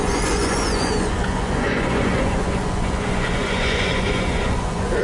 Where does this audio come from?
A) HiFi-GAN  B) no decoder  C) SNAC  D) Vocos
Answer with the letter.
D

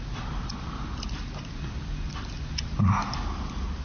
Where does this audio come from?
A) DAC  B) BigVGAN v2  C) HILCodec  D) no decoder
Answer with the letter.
D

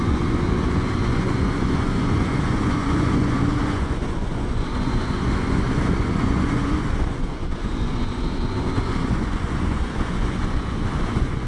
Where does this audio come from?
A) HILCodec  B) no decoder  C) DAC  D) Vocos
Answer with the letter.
D